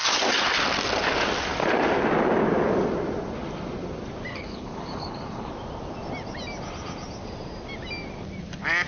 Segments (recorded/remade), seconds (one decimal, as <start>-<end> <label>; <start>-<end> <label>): 0.0-4.3 recorded; 4.3-5.5 remade; 5.5-8.9 recorded